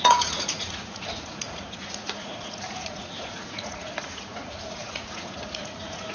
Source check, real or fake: fake